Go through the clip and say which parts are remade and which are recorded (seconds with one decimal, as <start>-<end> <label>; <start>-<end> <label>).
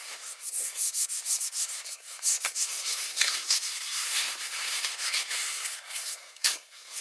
0.0-7.0 remade